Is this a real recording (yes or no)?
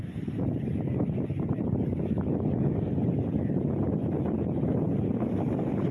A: yes